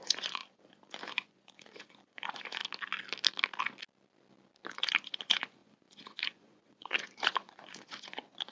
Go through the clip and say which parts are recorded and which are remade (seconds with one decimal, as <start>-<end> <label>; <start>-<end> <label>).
0.0-2.6 remade; 2.6-4.7 recorded; 4.7-8.5 remade